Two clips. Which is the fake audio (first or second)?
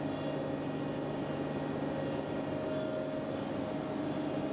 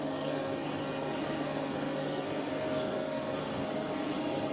second